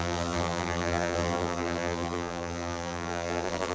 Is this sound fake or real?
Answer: fake